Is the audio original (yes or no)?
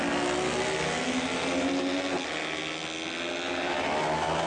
yes